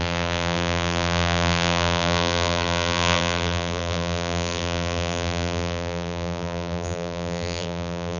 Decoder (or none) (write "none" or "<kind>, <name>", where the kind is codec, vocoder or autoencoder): vocoder, BigVGAN v2